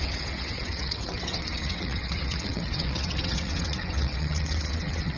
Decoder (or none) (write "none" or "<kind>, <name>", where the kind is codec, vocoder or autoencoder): vocoder, WaveNeXt